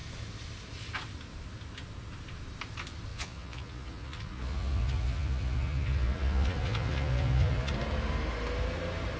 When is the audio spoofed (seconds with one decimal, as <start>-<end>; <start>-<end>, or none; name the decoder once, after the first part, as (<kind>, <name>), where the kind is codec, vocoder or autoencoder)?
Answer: 3.1-7.7 (vocoder, Vocos)